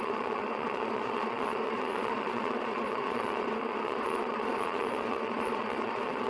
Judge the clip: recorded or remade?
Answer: remade